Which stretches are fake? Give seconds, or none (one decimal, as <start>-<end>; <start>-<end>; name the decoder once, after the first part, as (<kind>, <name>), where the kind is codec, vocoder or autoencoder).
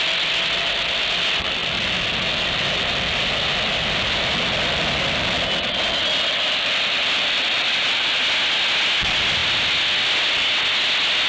none